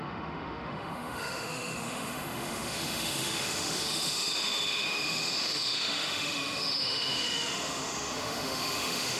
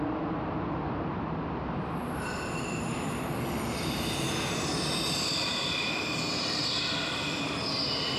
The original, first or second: second